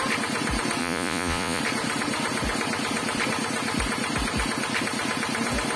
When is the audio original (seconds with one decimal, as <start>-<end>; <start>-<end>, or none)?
0.0-0.8; 1.6-5.8